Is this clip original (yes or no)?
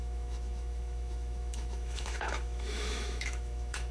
no